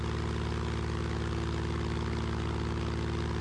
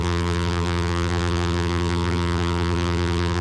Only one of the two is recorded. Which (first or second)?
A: first